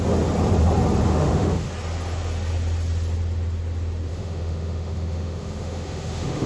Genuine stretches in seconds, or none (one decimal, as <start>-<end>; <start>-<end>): 0.0-1.1; 1.7-4.1